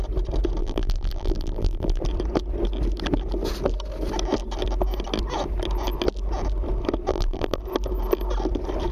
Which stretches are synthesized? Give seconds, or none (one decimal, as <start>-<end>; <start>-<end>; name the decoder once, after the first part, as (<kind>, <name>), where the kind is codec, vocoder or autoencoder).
0.6-2.0 (vocoder, BigVGAN v2); 7.1-7.6